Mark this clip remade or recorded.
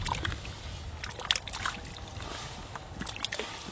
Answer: recorded